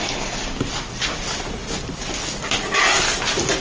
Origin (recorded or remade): recorded